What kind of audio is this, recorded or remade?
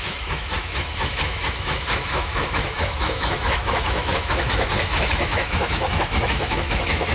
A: remade